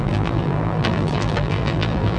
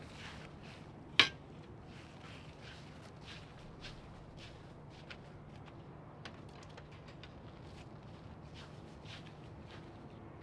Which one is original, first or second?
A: second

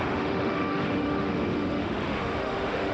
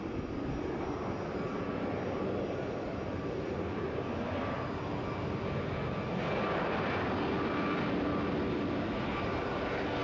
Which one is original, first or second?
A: second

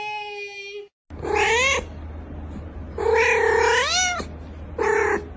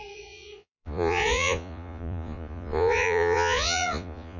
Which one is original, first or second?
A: first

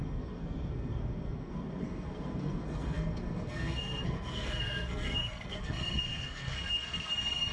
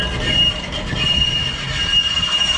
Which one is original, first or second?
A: second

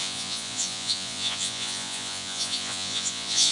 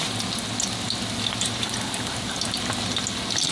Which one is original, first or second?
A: second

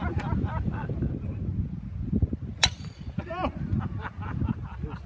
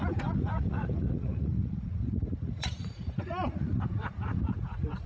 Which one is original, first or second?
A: first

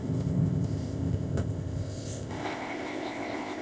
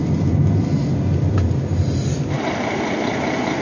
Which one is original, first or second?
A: second